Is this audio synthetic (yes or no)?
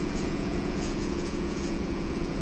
yes